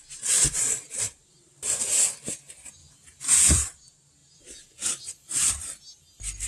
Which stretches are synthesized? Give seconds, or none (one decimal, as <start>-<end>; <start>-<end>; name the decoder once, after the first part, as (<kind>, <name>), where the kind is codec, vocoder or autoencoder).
2.8-3.5 (vocoder, Vocos)